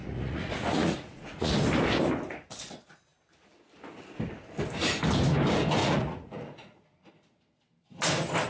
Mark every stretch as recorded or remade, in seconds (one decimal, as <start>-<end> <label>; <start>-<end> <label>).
0.0-1.5 remade; 1.5-5.8 recorded; 5.8-7.1 remade; 7.1-8.5 recorded